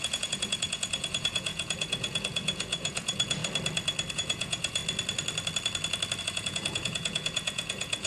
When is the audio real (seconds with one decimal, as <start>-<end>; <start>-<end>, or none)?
3.4-4.1; 4.8-6.2